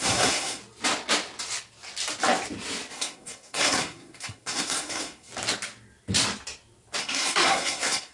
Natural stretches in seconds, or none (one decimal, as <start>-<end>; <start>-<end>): 0.6-2.9; 5.3-7.0